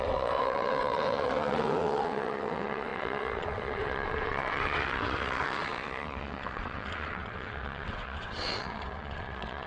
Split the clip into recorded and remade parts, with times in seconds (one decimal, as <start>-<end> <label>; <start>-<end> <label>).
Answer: 0.0-9.7 remade